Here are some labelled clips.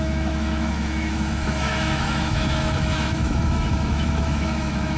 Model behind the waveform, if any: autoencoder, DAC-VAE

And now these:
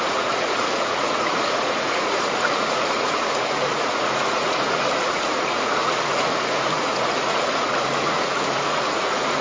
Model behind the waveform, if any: vocoder, Vocos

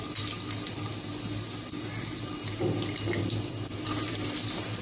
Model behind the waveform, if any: none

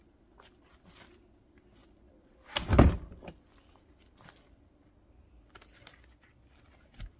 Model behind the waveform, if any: none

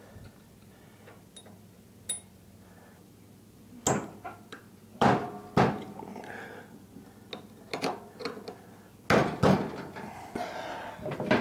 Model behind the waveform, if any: none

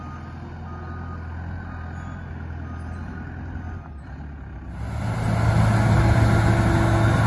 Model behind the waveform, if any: none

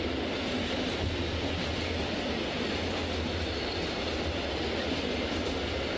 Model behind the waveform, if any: none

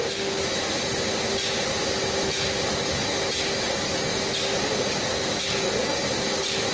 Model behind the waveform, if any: none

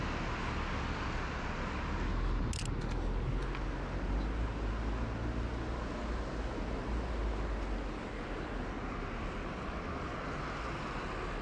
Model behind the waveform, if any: none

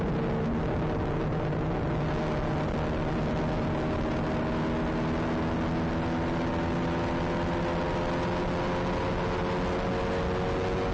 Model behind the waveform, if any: none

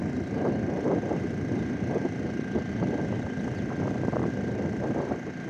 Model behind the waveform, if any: none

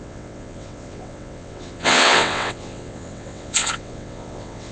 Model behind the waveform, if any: vocoder, WaveNeXt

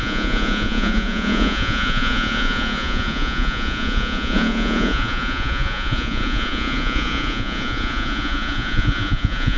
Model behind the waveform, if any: vocoder, Vocos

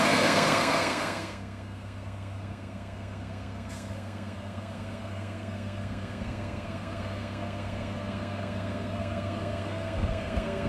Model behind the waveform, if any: codec, SNAC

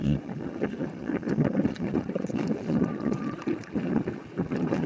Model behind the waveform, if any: vocoder, Vocos